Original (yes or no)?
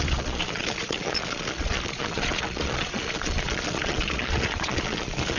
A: no